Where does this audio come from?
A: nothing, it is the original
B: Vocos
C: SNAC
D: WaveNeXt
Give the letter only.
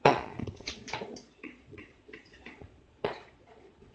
B